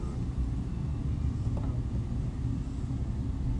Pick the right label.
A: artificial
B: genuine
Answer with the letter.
B